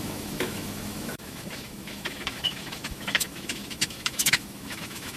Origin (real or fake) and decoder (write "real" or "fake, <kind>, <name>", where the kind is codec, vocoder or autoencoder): fake, autoencoder, DAC-VAE